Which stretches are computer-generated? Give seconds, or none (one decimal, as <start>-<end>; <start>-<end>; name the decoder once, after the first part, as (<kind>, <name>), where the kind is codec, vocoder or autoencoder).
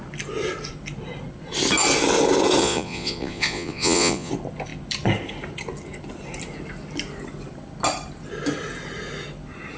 2.6-4.3 (vocoder, Vocos)